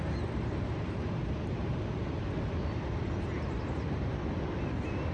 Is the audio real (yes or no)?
yes